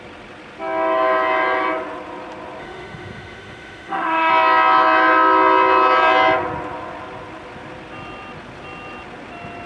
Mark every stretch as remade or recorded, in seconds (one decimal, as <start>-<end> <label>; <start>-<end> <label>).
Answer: 0.0-2.6 recorded; 2.6-4.3 remade; 4.3-9.7 recorded